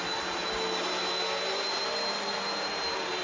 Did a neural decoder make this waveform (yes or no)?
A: no